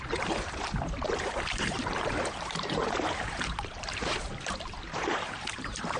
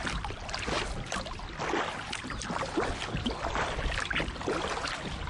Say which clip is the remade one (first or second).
first